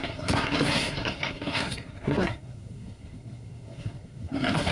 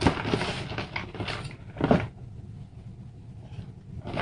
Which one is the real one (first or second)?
second